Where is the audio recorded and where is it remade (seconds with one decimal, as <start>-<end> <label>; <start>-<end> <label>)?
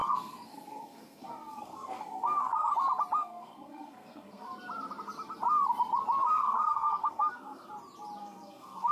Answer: 0.0-2.7 remade; 2.7-3.2 recorded; 3.2-4.5 remade; 4.5-6.2 recorded; 6.2-7.7 remade; 7.7-8.2 recorded; 8.2-8.9 remade